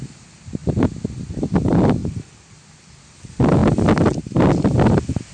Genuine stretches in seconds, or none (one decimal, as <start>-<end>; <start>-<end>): 0.0-3.6; 4.3-5.3